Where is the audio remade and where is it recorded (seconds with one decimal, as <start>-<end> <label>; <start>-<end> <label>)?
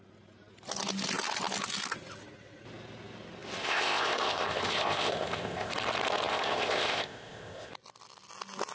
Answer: 0.0-3.6 recorded; 3.6-5.7 remade; 5.7-6.3 recorded; 6.3-7.7 remade; 7.7-8.7 recorded